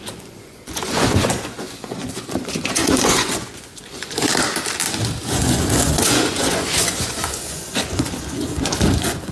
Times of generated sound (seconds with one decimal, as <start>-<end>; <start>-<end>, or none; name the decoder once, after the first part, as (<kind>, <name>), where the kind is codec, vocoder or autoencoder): 0.0-4.3 (vocoder, Vocos); 5.2-9.3